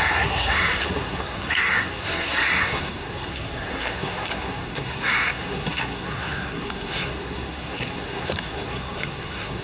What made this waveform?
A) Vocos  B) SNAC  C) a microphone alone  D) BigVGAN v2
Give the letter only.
B